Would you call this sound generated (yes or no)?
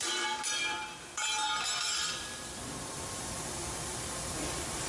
yes